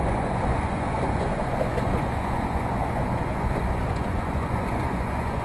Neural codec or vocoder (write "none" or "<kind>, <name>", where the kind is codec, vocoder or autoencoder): vocoder, Vocos